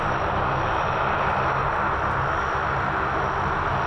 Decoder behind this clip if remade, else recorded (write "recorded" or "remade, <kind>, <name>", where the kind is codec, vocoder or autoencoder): recorded